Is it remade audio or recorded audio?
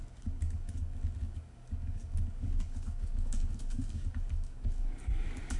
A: remade